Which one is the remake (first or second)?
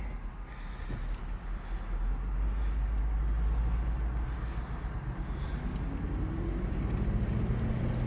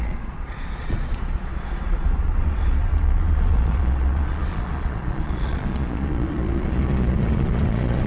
second